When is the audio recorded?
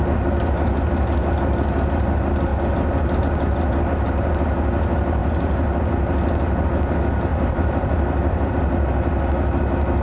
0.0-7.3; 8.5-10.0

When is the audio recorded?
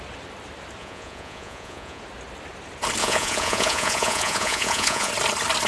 0.0-0.8; 2.0-3.0; 5.1-5.7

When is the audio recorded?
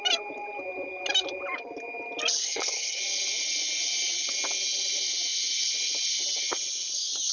0.0-2.4; 3.0-7.3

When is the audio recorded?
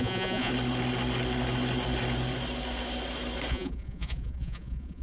0.5-3.5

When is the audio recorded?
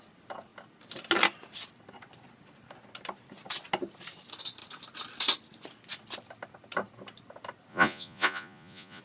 0.0-7.7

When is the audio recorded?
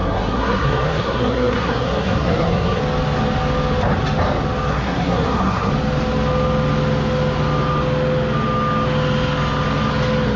2.8-4.7; 5.7-10.4